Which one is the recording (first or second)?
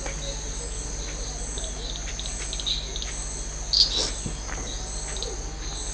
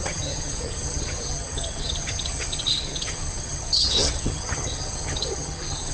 first